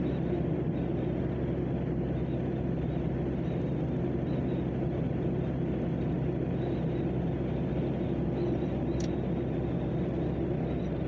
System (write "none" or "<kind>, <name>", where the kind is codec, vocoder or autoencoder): none